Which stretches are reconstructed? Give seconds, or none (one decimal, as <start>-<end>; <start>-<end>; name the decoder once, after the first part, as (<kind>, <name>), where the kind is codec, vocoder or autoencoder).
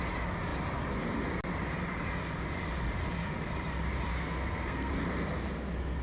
4.1-4.9 (codec, SNAC)